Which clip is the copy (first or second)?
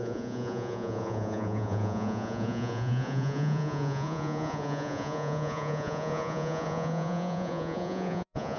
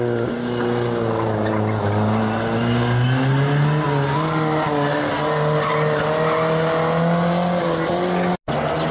first